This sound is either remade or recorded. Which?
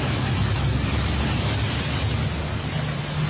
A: recorded